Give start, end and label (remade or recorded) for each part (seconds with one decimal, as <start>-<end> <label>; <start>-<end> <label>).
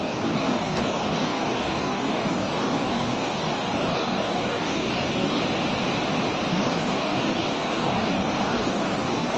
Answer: 0.0-5.4 remade; 5.4-6.5 recorded; 6.5-9.4 remade